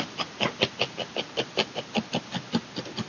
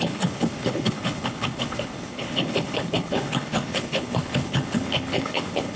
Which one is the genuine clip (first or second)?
first